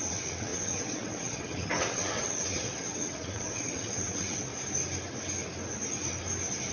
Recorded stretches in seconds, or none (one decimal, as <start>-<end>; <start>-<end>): 4.5-6.7